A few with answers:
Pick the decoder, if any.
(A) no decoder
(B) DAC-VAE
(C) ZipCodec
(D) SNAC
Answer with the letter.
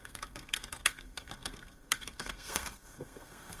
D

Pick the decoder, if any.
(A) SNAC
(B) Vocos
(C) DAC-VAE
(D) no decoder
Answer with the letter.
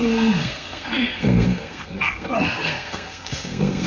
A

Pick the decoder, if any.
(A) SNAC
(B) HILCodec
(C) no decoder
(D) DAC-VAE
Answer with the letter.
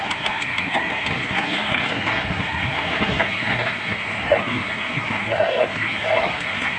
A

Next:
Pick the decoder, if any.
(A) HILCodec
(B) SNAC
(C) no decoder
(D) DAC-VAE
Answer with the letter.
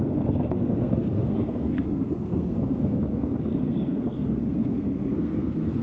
B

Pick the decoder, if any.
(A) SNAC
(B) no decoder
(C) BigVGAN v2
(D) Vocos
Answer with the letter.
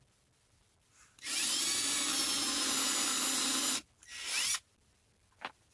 B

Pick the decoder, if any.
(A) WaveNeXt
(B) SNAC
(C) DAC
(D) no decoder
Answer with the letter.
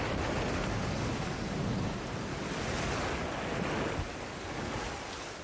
D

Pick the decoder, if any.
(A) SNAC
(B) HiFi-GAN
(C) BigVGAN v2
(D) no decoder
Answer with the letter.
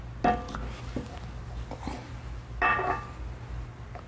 D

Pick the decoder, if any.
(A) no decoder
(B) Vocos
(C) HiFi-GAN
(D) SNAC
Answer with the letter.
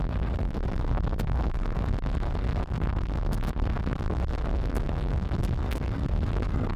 D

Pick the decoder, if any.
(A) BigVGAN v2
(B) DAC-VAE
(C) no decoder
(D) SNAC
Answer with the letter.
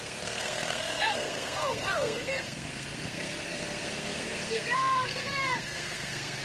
D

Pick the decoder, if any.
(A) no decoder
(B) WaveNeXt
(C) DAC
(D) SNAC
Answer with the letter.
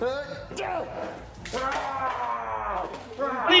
A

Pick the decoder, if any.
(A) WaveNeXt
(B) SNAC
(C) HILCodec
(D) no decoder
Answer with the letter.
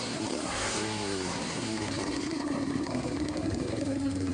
B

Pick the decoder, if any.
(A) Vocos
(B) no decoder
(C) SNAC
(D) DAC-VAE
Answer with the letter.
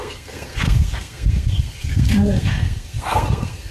C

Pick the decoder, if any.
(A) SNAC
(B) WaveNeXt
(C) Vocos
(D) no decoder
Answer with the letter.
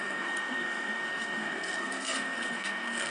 A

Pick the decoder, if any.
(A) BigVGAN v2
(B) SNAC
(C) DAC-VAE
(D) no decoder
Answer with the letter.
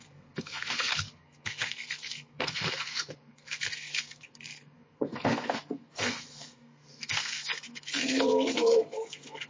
B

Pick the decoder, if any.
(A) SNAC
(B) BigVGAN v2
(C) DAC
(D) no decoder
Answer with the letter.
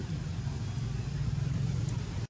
D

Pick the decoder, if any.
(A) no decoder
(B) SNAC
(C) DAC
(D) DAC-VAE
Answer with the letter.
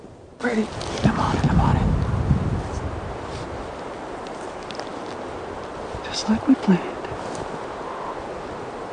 A